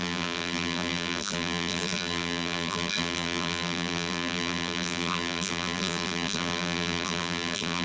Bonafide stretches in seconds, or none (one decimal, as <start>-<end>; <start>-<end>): none

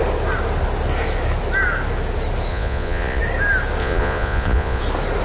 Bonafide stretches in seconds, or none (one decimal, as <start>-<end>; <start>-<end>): 0.0-2.5; 3.2-3.8; 4.8-5.2

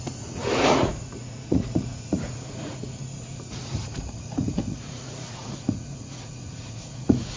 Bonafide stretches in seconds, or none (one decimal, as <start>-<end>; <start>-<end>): none

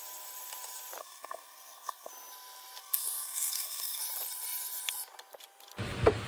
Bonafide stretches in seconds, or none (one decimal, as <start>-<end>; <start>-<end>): 0.0-1.0; 2.1-2.8; 4.0-6.3

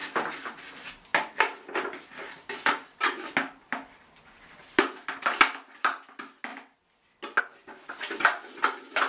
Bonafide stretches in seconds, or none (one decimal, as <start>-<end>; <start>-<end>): 0.0-9.1

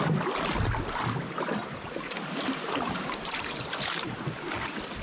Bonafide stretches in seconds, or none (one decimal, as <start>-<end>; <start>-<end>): 0.0-1.6; 4.4-5.0